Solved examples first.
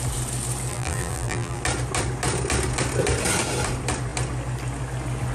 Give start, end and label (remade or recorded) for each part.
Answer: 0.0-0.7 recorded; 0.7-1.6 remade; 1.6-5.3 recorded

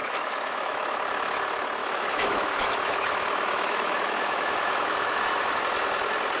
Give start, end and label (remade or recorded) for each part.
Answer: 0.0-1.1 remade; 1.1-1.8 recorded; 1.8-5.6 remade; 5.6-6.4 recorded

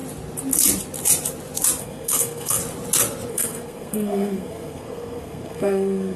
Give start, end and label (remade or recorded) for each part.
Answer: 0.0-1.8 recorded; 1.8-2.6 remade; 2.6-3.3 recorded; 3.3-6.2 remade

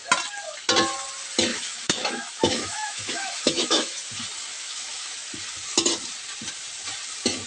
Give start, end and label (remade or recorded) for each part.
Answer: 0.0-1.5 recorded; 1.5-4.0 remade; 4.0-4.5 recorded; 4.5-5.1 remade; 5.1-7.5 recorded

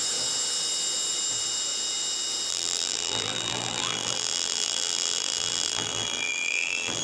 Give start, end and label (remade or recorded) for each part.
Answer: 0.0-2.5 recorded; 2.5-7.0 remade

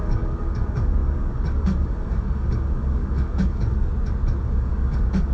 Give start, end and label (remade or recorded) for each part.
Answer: 0.0-3.9 remade; 3.9-4.4 recorded; 4.4-5.3 remade

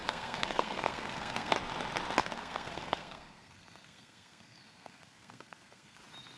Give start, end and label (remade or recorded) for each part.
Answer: 0.0-1.5 remade; 1.5-2.2 recorded; 2.2-6.0 remade; 6.0-6.4 recorded